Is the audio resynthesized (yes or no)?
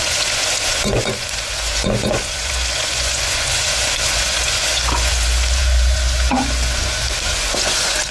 yes